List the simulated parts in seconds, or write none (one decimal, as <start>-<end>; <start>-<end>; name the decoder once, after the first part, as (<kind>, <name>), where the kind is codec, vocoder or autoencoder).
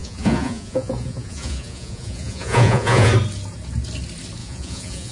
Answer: 0.0-3.1 (vocoder, Vocos); 4.4-5.1